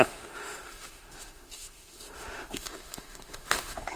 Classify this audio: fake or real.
fake